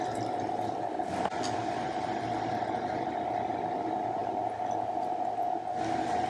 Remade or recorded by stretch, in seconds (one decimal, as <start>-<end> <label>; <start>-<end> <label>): 0.0-4.2 remade; 4.2-6.3 recorded